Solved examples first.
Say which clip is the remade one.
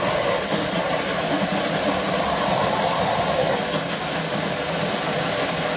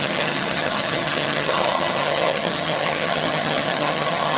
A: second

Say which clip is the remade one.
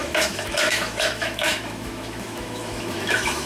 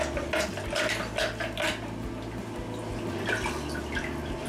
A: first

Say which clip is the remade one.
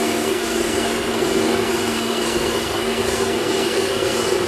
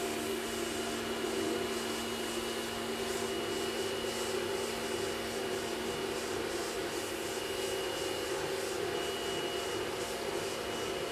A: first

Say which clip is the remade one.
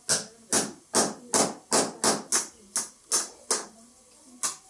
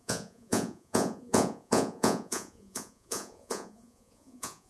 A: second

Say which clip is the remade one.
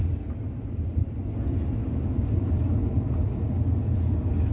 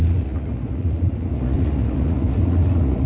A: second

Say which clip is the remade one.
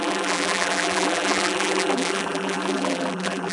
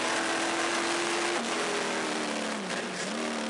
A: first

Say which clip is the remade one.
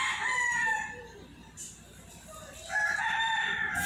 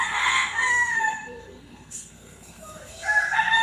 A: second